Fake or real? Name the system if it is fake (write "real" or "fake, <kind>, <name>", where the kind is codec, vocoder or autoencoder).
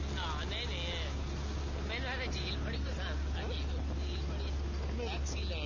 real